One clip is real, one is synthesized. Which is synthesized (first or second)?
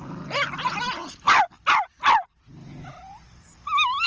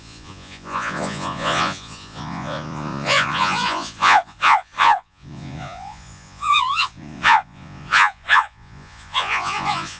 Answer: second